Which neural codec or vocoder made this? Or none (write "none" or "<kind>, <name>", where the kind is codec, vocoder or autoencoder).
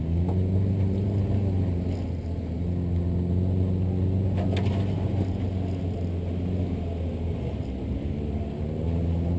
none